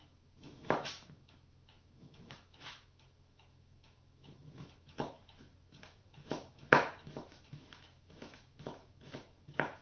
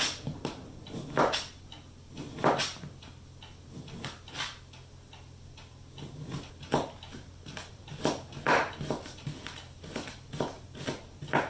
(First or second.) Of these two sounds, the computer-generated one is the first